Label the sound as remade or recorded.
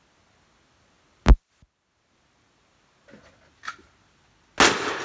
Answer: recorded